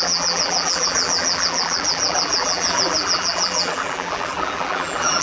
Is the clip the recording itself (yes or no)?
no